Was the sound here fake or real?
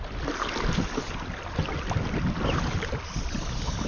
real